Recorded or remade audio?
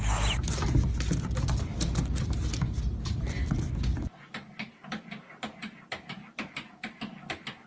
recorded